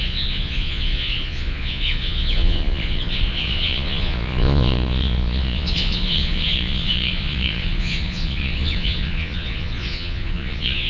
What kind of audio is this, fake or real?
fake